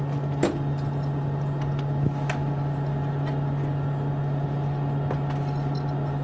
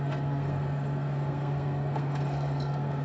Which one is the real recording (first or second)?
first